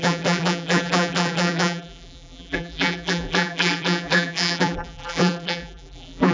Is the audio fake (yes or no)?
yes